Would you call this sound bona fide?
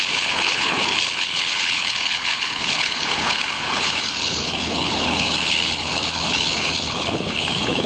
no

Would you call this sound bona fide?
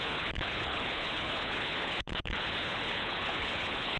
no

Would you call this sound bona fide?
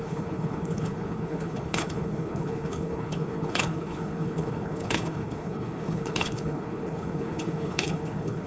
no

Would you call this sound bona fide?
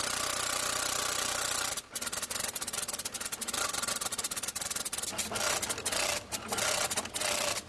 yes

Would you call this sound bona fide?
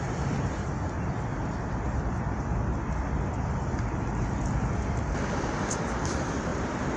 yes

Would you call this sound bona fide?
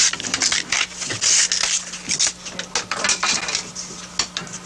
yes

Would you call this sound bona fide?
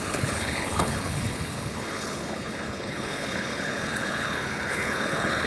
no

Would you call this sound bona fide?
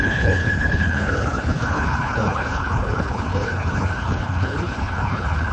no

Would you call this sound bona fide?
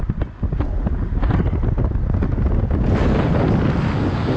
yes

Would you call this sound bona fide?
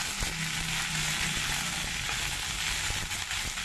yes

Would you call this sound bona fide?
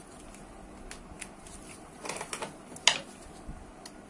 yes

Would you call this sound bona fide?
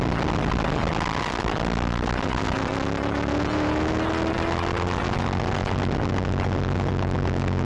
yes